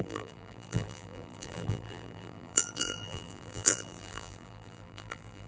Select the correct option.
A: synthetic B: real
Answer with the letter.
A